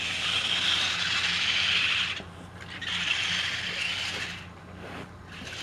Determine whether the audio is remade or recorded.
recorded